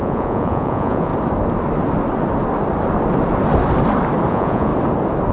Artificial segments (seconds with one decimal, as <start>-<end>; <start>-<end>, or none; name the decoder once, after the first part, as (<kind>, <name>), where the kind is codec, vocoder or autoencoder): 0.0-1.1 (vocoder, Vocos); 4.3-4.7

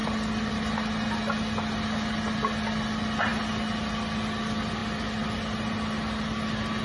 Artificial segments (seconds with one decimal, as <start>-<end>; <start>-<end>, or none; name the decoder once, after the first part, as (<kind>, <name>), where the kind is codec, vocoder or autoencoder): none

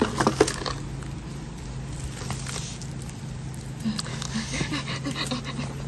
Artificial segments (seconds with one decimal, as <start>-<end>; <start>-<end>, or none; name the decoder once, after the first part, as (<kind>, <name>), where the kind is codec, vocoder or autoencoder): 4.1-4.7 (codec, DAC)

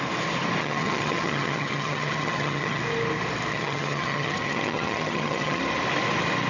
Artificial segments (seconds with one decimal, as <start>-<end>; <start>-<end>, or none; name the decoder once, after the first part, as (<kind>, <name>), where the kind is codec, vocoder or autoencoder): 0.6-2.8 (vocoder, HiFi-GAN); 3.5-5.6